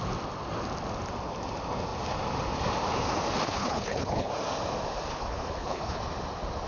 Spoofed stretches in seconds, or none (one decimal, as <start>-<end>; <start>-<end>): 3.5-4.3; 5.1-6.0